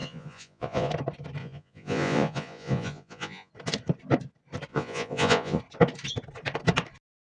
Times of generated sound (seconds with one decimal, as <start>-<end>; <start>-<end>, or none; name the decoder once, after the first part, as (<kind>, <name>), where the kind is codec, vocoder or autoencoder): 0.0-0.9 (vocoder, Vocos); 1.4-3.5; 4.7-5.6